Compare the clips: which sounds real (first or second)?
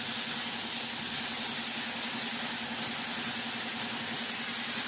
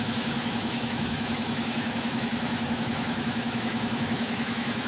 first